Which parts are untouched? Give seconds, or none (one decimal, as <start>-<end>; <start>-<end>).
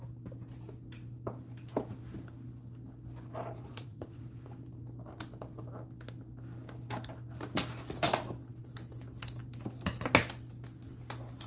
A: 0.0-3.6; 4.2-11.5